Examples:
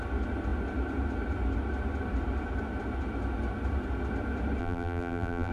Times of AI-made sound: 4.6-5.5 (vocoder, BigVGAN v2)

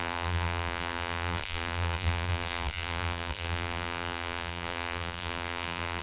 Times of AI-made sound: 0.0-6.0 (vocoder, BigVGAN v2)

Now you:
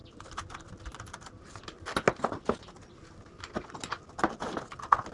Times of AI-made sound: 0.8-1.9 (vocoder, BigVGAN v2)

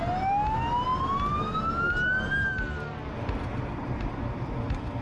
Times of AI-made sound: 3.5-4.5 (vocoder, BigVGAN v2)

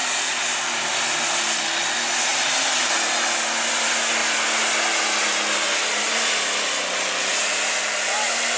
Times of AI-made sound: 2.3-2.9 (vocoder, BigVGAN v2)